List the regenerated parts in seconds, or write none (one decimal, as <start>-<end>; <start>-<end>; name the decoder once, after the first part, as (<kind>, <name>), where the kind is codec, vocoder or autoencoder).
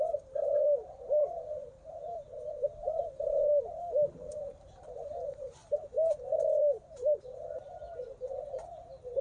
0.0-1.2 (vocoder, BigVGAN v2); 3.0-5.6; 6.6-9.2